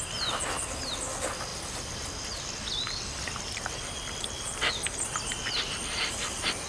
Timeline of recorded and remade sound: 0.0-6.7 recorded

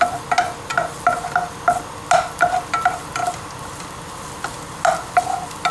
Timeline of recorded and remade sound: 0.0-5.7 recorded

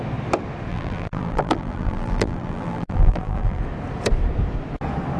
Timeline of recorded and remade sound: 0.0-0.7 recorded; 0.7-3.6 remade; 3.6-5.2 recorded

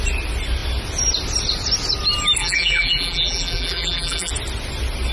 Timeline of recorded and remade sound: 0.0-2.4 recorded; 2.4-4.3 remade; 4.3-5.1 recorded

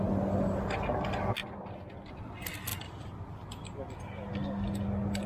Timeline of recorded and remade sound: 0.0-5.3 recorded

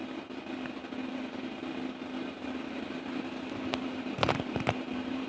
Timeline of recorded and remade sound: 0.0-3.1 recorded; 3.1-5.3 remade

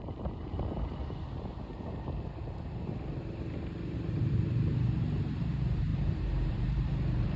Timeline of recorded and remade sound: 0.0-1.0 remade; 1.0-5.4 recorded; 5.4-7.4 remade

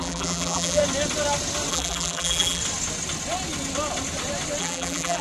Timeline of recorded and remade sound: 0.0-0.8 remade; 0.8-1.7 recorded; 1.7-2.6 remade; 2.6-4.6 recorded; 4.6-5.2 remade